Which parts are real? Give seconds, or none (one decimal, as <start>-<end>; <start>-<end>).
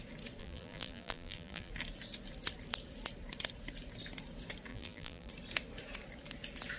0.0-0.4; 1.7-4.7; 5.3-6.8